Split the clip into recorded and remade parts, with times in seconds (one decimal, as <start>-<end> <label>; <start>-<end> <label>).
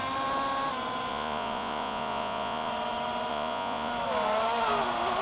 0.0-1.1 recorded; 1.1-2.7 remade; 2.7-3.3 recorded; 3.3-3.9 remade; 3.9-5.2 recorded